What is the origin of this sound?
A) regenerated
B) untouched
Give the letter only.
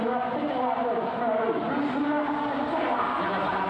B